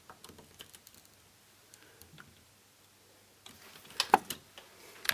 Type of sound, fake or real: real